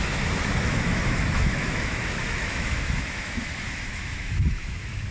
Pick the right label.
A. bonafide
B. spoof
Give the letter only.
B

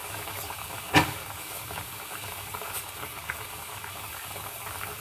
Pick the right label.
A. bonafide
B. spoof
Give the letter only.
B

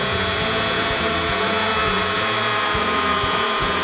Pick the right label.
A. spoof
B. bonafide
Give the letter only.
A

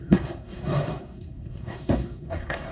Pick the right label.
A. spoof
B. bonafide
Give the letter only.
A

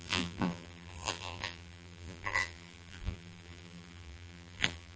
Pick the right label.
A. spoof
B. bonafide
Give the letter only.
A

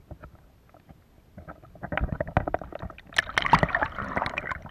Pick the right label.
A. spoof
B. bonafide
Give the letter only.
B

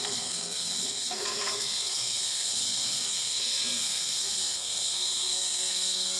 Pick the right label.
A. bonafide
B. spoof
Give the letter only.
B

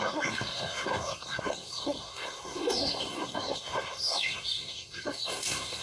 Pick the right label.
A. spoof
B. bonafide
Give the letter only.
A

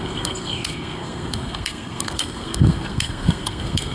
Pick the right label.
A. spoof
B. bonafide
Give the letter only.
A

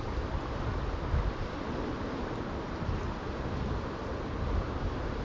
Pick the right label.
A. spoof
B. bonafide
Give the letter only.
B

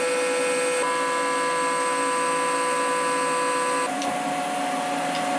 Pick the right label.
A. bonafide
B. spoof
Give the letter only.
A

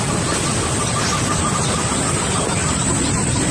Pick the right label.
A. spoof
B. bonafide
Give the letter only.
B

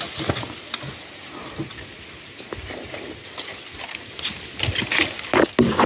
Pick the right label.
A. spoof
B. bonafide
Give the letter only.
B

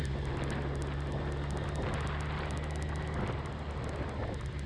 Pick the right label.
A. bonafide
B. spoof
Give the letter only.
A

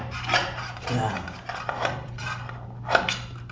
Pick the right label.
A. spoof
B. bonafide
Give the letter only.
A